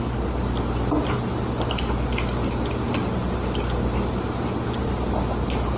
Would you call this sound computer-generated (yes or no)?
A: no